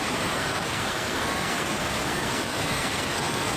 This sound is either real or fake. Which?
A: fake